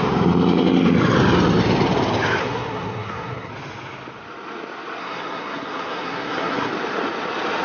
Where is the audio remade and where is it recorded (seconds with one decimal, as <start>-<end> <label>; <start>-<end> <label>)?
0.0-2.4 recorded; 2.4-3.5 remade; 3.5-5.0 recorded; 5.0-6.7 remade; 6.7-7.6 recorded